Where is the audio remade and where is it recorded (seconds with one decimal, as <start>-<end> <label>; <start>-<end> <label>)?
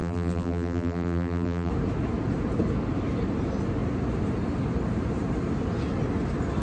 0.0-1.7 remade; 1.7-6.6 recorded